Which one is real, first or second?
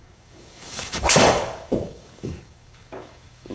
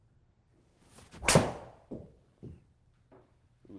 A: second